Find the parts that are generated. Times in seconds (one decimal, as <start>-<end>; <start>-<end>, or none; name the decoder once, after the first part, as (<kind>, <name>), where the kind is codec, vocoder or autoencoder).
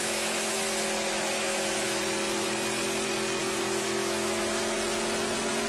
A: 0.0-2.0 (autoencoder, DAC-VAE); 3.4-4.6